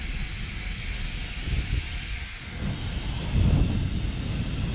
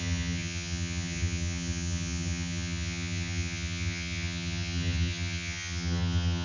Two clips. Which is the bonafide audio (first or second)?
first